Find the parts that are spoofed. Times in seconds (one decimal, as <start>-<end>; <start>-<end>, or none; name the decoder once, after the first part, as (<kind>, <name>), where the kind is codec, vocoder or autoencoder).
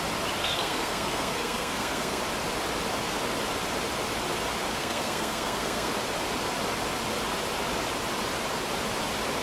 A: 0.4-2.2 (codec, SNAC); 4.7-5.9